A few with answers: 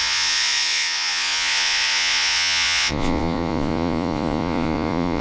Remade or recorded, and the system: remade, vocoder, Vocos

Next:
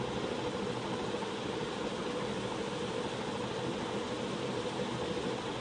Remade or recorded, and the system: recorded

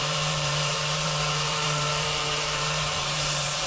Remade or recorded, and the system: remade, vocoder, BigVGAN v2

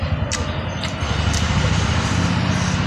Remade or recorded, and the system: recorded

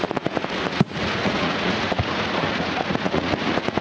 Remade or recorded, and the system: remade, vocoder, Vocos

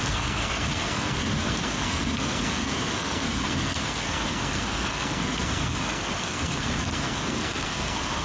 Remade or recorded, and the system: remade, codec, SNAC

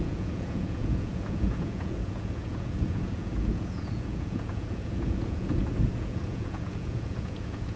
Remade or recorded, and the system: remade, vocoder, Vocos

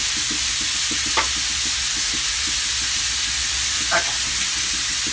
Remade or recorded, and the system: recorded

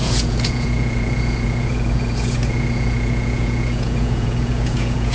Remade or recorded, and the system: remade, vocoder, Vocos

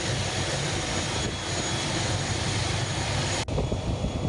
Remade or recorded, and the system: recorded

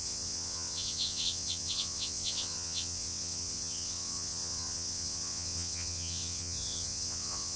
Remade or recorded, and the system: remade, vocoder, WaveNeXt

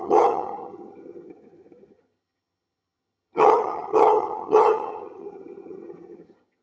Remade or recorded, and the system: remade, vocoder, HiFi-GAN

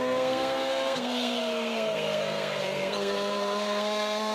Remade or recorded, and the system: remade, codec, SNAC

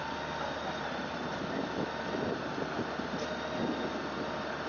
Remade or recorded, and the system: recorded